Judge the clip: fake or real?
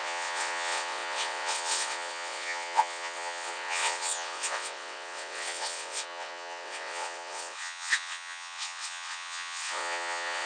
fake